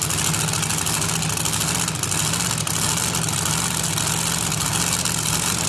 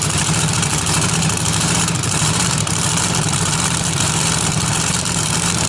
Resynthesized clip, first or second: second